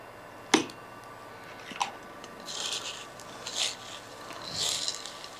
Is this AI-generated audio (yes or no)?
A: no